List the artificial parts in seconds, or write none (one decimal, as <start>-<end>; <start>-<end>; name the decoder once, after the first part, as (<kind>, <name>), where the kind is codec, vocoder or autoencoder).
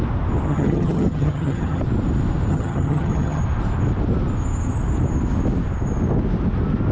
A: 0.5-1.8 (vocoder, HiFi-GAN); 2.5-3.4